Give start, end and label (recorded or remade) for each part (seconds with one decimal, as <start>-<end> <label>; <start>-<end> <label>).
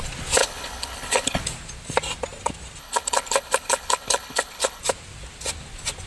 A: 0.0-0.4 recorded; 0.4-1.4 remade; 1.4-2.8 recorded; 2.8-4.8 remade; 4.8-6.1 recorded